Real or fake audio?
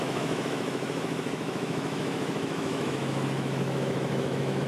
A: fake